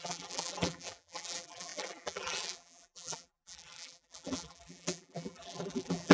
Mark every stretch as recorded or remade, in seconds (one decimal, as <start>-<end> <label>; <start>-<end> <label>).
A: 0.0-6.1 remade